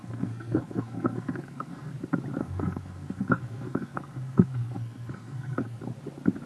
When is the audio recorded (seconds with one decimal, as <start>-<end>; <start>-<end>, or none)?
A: 1.9-2.4; 5.8-6.5